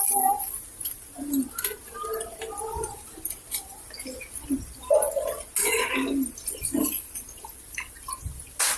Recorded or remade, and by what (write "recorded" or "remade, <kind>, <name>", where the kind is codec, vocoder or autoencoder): recorded